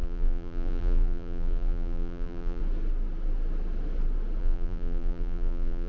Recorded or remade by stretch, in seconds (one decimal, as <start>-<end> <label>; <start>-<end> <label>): 0.0-2.6 remade; 2.6-4.4 recorded; 4.4-5.9 remade